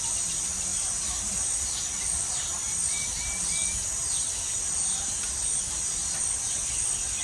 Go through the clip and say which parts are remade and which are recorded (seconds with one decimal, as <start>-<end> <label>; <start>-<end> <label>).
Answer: 0.0-7.2 recorded